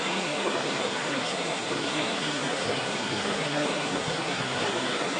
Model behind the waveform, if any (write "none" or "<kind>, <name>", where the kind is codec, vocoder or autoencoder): codec, SNAC